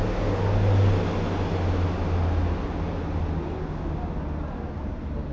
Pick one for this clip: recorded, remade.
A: recorded